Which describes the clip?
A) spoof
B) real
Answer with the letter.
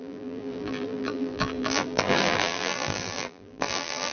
A